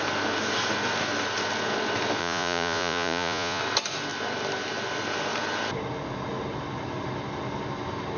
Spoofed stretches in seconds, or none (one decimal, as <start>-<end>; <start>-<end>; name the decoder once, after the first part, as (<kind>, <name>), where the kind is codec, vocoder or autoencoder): 2.2-3.6 (vocoder, Vocos)